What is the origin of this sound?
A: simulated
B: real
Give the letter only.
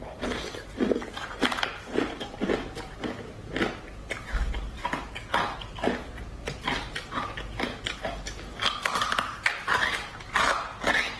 B